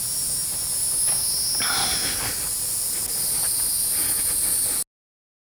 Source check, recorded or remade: recorded